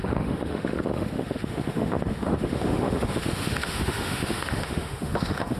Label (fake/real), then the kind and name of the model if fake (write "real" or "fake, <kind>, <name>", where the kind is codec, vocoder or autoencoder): fake, autoencoder, DAC-VAE